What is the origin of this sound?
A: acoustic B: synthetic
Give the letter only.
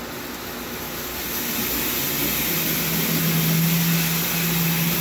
A